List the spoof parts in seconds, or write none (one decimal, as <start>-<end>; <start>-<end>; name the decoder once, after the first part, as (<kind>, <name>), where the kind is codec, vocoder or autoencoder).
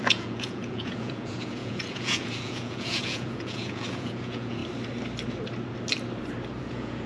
0.0-4.6 (vocoder, Vocos); 6.6-7.1